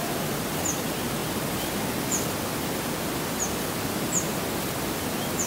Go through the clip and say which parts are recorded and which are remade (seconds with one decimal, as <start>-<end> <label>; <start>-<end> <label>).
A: 0.0-5.5 recorded